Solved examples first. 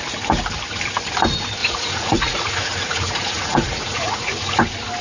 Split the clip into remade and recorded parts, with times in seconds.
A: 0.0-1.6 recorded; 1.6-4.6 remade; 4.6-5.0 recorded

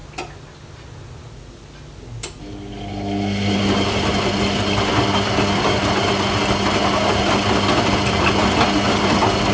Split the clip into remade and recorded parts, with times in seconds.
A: 0.0-9.5 recorded

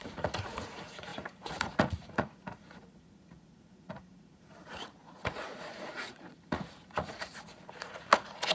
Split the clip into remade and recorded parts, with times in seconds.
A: 0.0-8.5 remade

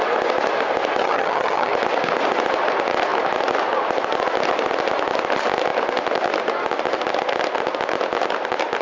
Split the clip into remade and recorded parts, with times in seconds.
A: 0.0-1.0 recorded; 1.0-1.7 remade; 1.7-8.8 recorded

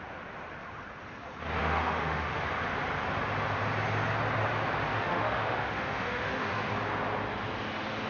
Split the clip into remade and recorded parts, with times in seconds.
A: 0.0-1.6 recorded; 1.6-2.4 remade; 2.4-4.9 recorded; 4.9-6.7 remade; 6.7-8.1 recorded

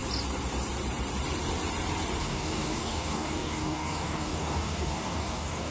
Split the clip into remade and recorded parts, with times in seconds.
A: 0.0-2.2 recorded; 2.2-5.7 remade

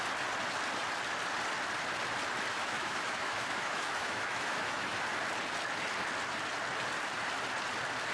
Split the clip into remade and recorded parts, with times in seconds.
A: 0.0-2.6 recorded; 2.6-5.0 remade; 5.0-8.1 recorded